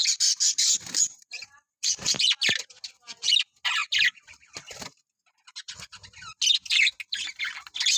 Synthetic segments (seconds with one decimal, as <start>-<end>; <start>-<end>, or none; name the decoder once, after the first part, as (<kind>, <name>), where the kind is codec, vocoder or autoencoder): none

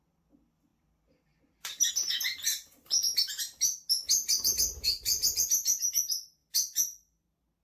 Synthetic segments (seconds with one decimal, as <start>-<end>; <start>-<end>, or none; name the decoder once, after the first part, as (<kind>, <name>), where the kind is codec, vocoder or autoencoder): none

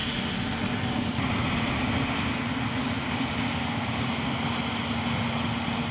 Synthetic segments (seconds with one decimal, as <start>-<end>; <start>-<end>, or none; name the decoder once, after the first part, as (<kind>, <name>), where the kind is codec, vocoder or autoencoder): 0.0-0.9 (vocoder, BigVGAN v2); 2.8-4.6

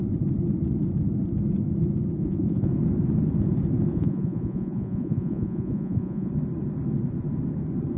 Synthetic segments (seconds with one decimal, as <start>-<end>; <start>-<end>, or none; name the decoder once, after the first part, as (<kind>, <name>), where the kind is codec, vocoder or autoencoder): 2.2-2.7 (vocoder, Vocos); 3.9-6.3

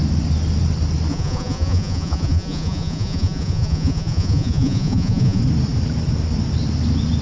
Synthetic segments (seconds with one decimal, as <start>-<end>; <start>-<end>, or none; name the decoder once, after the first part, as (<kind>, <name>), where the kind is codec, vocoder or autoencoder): 1.1-5.4 (vocoder, Vocos)

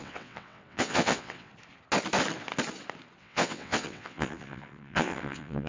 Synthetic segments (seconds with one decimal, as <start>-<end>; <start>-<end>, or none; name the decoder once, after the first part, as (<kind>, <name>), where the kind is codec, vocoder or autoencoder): 0.0-1.5 (vocoder, WaveNeXt); 3.2-5.7